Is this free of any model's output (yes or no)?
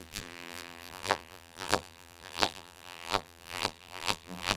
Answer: no